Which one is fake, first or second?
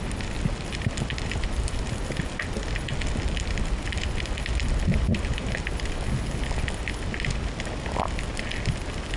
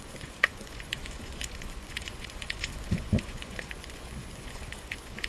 second